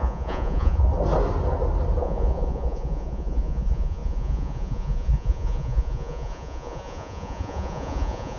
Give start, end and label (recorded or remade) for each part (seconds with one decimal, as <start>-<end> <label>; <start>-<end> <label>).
0.0-0.9 remade; 0.9-2.0 recorded; 2.0-8.4 remade